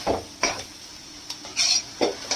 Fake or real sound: real